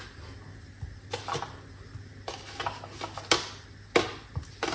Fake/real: real